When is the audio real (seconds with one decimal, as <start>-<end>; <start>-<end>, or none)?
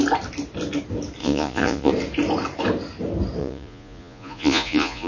0.0-1.2; 1.9-3.4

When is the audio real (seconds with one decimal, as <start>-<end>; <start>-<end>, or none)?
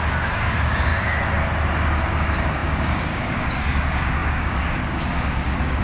0.9-2.1